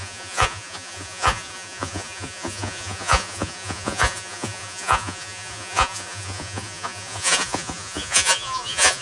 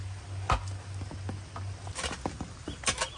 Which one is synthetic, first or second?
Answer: first